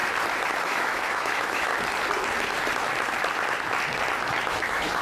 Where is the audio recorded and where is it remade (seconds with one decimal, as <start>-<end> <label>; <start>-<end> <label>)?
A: 0.0-0.6 recorded; 0.6-1.7 remade; 1.7-4.5 recorded; 4.5-5.0 remade